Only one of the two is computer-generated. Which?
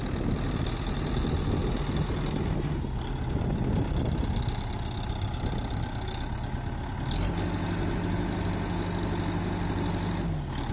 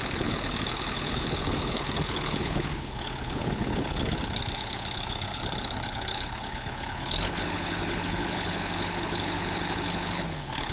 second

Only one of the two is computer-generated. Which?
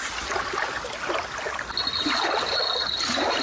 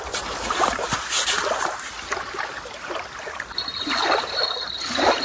second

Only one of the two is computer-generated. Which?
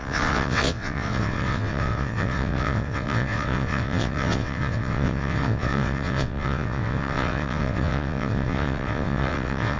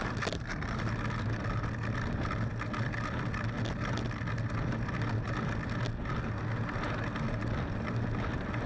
first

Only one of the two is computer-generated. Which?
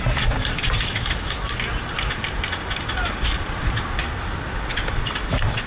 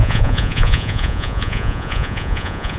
second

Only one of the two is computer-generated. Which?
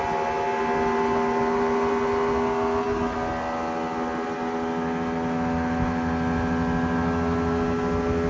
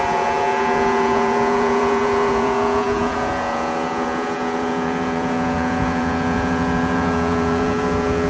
second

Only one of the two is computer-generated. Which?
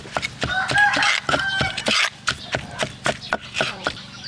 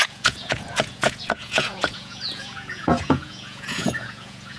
second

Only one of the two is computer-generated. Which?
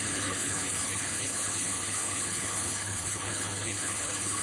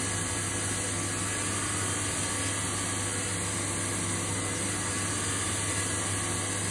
first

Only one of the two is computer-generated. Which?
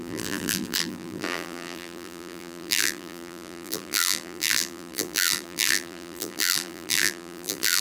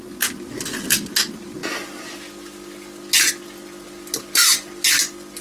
first